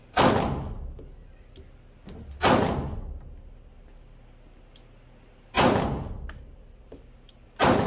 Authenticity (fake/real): real